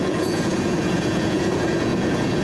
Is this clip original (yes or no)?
no